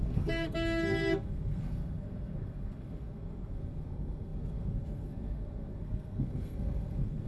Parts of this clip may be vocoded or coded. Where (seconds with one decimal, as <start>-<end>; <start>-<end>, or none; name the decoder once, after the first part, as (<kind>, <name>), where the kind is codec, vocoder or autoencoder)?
0.0-7.3 (codec, SNAC)